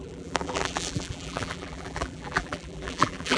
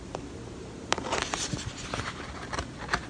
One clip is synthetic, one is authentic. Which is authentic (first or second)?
second